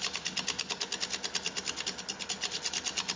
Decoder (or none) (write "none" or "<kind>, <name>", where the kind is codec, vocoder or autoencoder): none